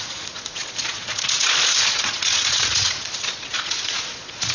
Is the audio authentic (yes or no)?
no